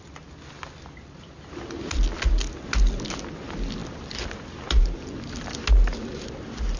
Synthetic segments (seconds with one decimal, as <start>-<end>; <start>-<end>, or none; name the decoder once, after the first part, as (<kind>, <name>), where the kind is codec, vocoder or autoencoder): none